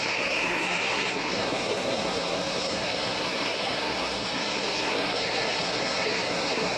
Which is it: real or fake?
fake